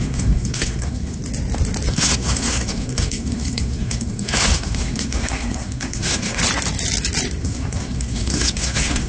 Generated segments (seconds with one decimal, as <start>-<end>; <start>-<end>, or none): 0.0-1.2; 1.9-6.4; 7.4-9.1